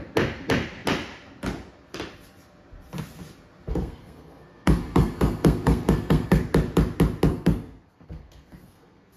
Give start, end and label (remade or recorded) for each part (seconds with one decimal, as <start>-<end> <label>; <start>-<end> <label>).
0.0-3.7 recorded; 3.7-6.4 remade; 6.4-7.3 recorded; 7.3-9.2 remade